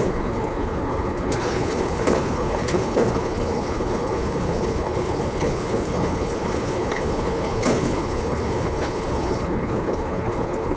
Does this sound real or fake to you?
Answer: fake